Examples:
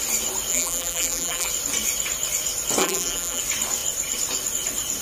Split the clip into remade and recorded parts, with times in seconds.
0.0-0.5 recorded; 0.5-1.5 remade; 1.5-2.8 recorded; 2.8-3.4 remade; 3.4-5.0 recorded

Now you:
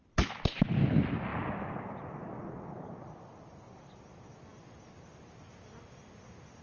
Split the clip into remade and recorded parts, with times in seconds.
0.0-6.6 recorded

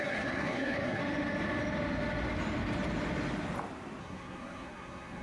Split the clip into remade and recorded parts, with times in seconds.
0.0-1.0 remade; 1.0-4.0 recorded; 4.0-5.2 remade